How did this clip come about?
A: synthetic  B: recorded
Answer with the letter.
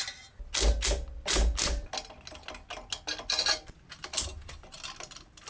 B